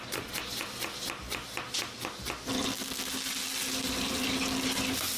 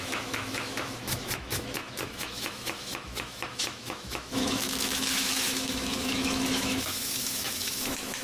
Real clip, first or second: first